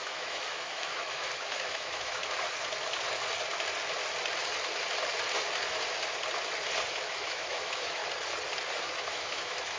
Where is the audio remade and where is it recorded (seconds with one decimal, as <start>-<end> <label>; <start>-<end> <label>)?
0.0-2.2 remade; 2.2-6.9 recorded; 6.9-8.0 remade; 8.0-8.8 recorded; 8.8-9.8 remade